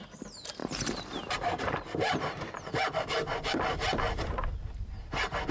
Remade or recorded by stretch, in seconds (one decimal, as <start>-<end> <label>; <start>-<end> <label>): 0.0-0.6 recorded; 0.6-2.5 remade; 2.5-5.5 recorded